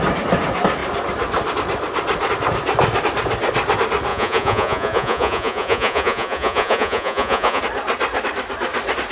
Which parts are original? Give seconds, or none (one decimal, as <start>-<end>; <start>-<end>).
0.0-4.1; 7.6-9.1